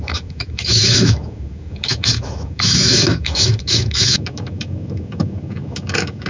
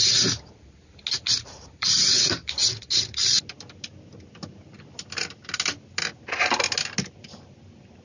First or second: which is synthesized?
first